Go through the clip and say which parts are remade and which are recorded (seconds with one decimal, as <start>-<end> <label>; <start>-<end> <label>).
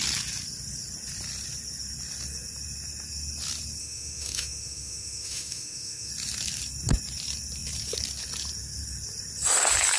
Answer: 0.0-3.8 recorded; 3.8-6.1 remade; 6.1-10.0 recorded